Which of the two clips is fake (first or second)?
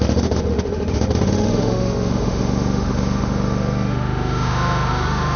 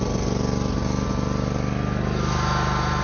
first